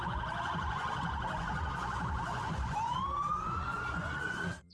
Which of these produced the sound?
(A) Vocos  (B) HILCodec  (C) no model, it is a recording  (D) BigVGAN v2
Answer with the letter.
A